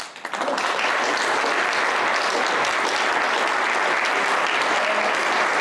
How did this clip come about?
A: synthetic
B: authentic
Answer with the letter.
B